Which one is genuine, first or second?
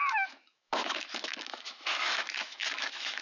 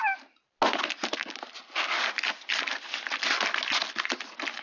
second